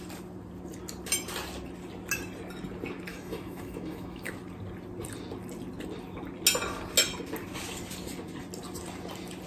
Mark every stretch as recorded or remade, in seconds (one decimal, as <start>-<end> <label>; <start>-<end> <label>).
0.0-3.1 recorded; 3.1-4.3 remade; 4.3-9.5 recorded